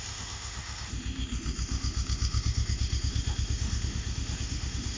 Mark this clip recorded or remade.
remade